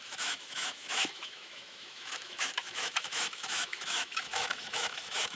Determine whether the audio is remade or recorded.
remade